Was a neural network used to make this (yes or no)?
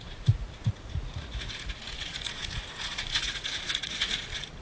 yes